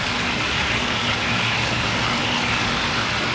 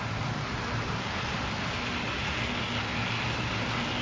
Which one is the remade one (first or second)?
first